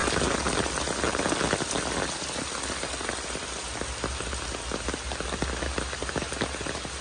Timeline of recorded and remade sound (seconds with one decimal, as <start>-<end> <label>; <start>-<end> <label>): 0.0-7.0 recorded